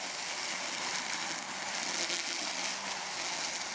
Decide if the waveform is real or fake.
real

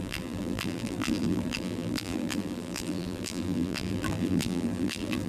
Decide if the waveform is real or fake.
fake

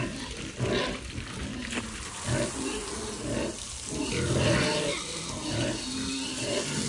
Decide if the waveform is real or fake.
real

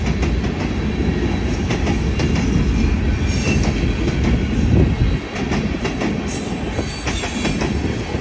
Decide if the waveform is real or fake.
real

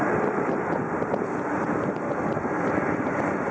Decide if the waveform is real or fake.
fake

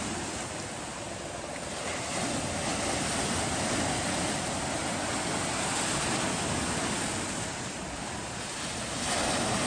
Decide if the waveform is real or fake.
real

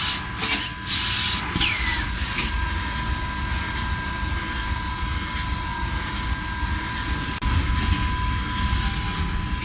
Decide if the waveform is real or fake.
real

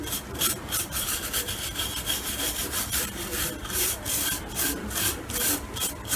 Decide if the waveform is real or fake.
fake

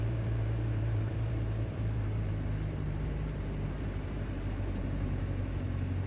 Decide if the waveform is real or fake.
fake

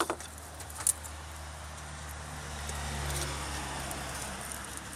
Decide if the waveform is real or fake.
real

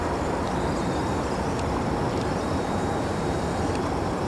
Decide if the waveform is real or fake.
fake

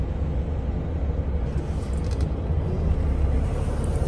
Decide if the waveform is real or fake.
real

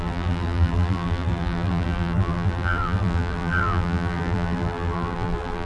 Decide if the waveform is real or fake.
fake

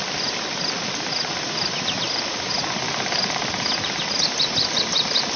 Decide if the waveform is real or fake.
real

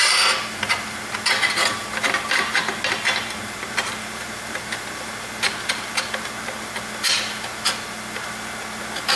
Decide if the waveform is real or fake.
real